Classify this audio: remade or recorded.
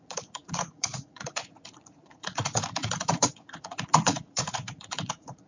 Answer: remade